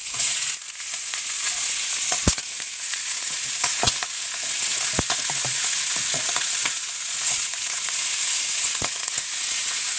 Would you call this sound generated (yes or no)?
yes